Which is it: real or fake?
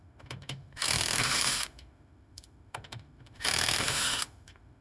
fake